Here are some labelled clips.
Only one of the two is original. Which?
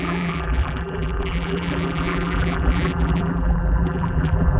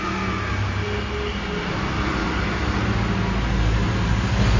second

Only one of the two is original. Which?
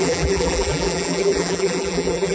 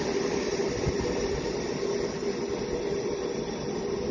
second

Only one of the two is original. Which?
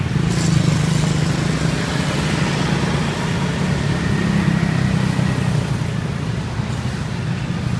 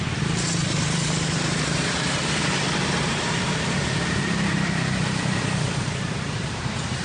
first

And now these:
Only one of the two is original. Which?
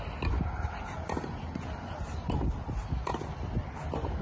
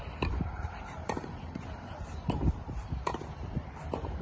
first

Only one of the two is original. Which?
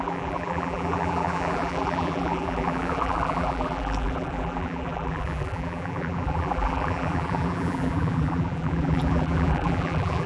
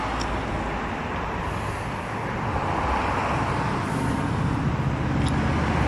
second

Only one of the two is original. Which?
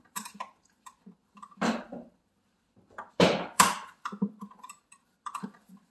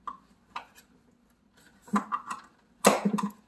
second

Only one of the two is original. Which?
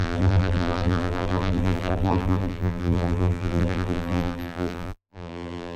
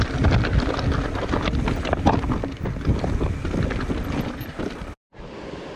second